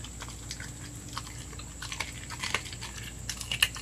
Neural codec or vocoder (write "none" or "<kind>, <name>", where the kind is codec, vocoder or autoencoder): none